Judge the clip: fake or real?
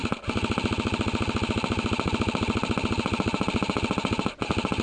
real